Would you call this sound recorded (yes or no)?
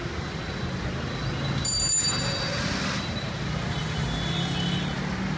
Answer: yes